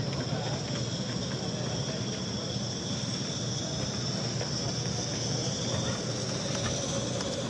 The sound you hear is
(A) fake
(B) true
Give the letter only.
B